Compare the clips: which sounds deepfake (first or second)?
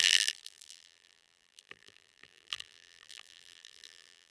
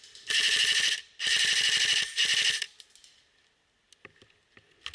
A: first